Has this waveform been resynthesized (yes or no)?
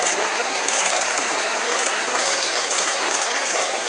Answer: yes